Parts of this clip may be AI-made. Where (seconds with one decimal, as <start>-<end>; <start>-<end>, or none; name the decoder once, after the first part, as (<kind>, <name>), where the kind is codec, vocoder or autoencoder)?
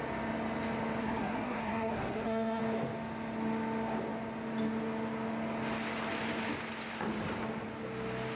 1.0-2.6 (codec, SNAC)